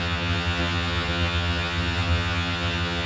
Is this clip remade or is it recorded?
remade